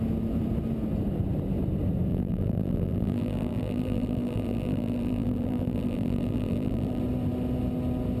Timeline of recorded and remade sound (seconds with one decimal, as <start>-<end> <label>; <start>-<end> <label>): 0.0-2.1 recorded; 2.1-7.0 remade; 7.0-8.2 recorded